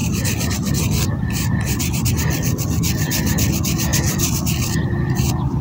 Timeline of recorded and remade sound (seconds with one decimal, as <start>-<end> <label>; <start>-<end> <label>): 0.0-3.9 recorded; 3.9-5.6 remade